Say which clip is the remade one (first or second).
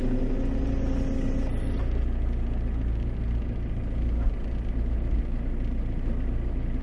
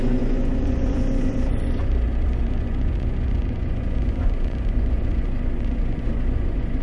second